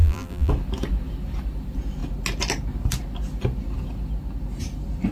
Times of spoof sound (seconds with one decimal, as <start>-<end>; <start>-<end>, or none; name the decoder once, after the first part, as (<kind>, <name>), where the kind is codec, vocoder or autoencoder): 0.0-0.5 (vocoder, BigVGAN v2)